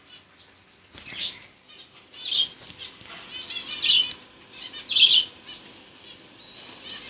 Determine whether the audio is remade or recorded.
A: recorded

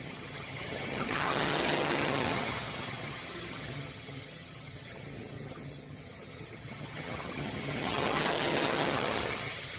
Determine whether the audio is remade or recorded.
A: remade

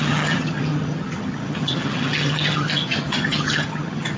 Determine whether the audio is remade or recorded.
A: remade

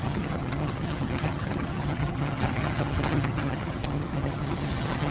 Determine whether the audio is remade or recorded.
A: remade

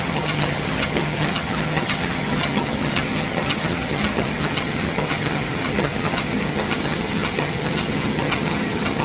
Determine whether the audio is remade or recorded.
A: remade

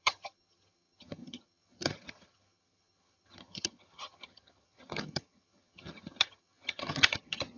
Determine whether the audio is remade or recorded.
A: remade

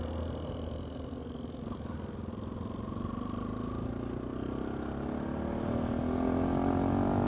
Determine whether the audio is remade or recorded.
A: recorded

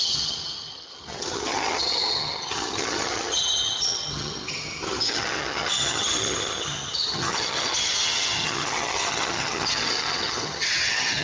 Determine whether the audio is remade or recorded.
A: remade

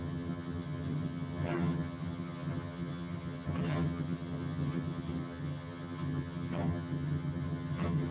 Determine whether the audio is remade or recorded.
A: remade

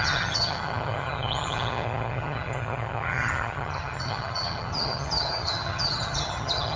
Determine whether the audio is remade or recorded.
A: remade